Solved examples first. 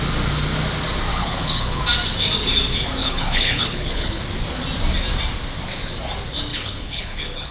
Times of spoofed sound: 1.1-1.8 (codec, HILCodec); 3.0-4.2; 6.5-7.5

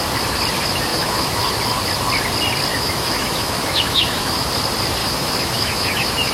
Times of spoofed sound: 0.9-1.4 (autoencoder, DAC-VAE); 2.7-4.5; 5.0-6.3

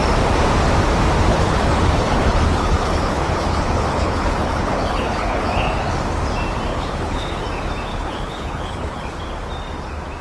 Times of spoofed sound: 1.3-5.9 (codec, HILCodec); 6.7-7.4; 7.9-9.2